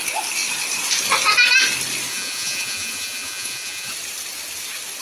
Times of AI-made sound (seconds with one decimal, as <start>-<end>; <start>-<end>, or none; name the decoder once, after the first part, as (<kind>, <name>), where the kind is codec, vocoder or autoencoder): 2.1-3.9 (vocoder, Vocos)